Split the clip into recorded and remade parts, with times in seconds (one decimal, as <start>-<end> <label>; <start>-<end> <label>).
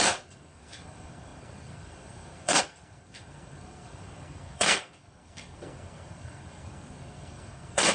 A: 0.0-7.9 remade